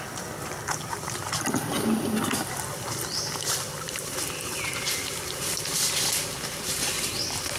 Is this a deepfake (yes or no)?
no